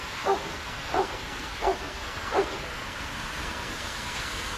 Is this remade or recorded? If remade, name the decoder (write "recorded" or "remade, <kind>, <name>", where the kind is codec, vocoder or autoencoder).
remade, codec, SNAC